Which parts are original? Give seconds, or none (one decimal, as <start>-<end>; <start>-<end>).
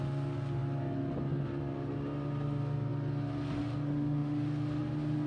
0.0-5.3